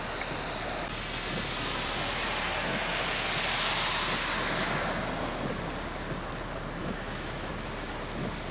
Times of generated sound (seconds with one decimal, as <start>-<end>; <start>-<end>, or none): 6.8-7.5